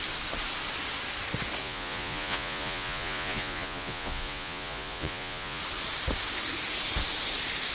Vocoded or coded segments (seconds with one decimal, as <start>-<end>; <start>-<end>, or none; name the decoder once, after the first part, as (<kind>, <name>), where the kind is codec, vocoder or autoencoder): 1.6-5.6 (vocoder, Vocos)